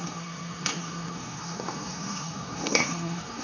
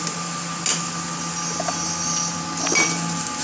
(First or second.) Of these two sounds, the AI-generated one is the first